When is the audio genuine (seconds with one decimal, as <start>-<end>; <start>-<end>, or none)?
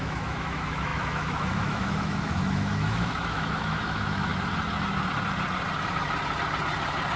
4.3-7.2